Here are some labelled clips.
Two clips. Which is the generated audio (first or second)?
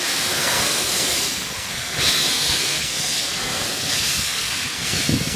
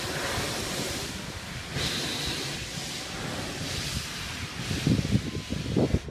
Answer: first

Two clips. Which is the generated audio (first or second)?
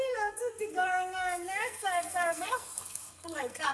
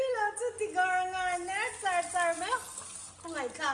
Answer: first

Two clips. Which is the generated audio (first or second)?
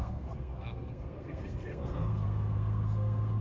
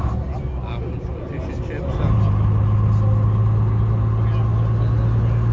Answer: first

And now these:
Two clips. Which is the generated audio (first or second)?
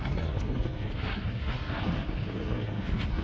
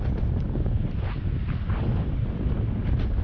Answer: first